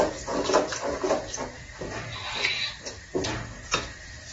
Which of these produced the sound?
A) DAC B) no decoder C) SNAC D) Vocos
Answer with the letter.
B